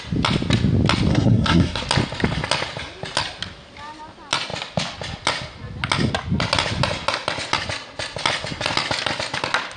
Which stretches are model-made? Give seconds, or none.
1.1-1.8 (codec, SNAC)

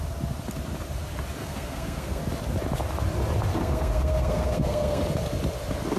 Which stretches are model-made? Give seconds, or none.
1.4-2.2 (codec, SNAC); 3.5-5.0

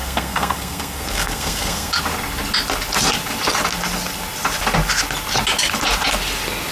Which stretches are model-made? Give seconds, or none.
0.0-2.0 (codec, SNAC)